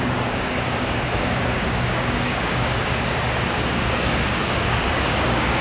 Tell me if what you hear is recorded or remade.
remade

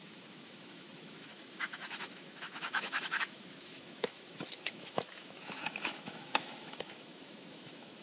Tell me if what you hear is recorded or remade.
remade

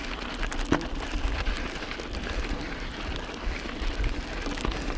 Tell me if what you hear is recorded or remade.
recorded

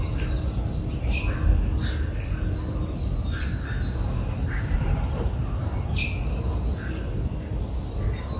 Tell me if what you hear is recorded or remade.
recorded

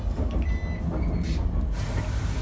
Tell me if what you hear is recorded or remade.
recorded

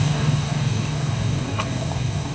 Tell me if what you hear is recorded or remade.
remade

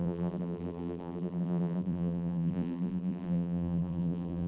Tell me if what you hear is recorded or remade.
remade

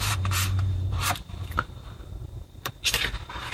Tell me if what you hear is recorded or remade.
remade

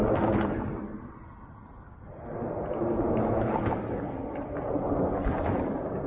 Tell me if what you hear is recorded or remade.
recorded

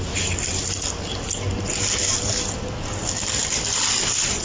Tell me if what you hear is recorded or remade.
recorded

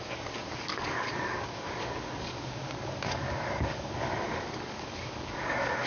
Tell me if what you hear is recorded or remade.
remade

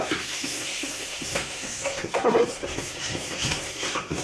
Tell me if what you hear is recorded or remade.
remade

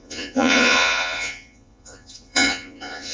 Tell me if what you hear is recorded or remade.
remade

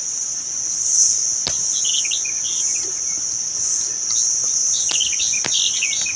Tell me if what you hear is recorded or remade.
recorded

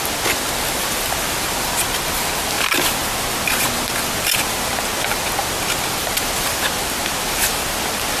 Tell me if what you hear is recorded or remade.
recorded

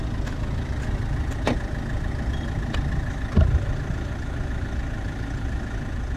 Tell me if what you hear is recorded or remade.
recorded